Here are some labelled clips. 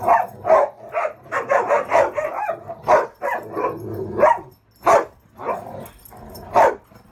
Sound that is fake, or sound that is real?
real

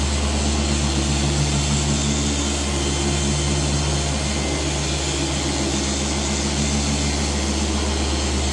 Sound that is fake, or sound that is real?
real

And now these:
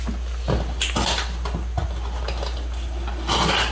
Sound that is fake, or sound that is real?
real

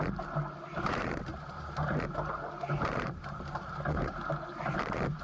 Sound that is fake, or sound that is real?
fake